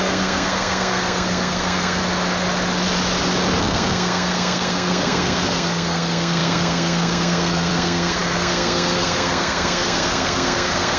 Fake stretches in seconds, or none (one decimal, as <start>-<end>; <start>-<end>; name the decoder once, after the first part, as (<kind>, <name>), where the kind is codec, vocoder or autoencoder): 0.0-2.0 (codec, SNAC); 3.6-11.0